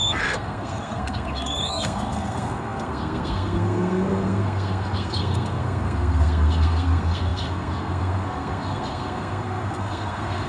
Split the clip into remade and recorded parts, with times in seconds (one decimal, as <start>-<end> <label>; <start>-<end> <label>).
0.0-10.5 remade